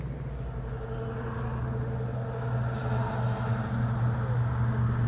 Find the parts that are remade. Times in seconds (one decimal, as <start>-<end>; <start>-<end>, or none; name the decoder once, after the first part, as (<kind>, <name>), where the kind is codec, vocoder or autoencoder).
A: none